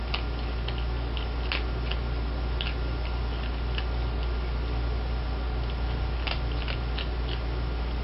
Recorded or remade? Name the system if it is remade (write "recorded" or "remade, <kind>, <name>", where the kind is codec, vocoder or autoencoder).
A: recorded